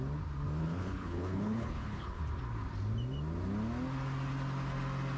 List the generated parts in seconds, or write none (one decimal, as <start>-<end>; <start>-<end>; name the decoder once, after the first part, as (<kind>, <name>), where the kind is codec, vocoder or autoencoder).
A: 0.6-2.2 (codec, HILCodec)